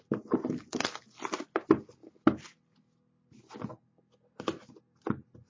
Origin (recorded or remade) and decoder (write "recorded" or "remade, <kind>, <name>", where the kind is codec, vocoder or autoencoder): recorded